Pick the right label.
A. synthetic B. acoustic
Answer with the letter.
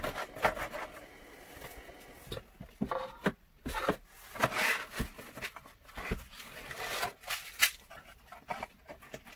B